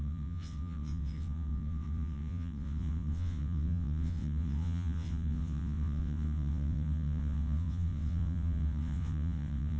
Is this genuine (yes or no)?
no